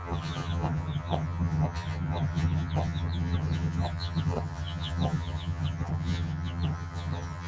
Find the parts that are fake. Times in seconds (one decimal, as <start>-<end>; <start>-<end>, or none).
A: 0.0-7.5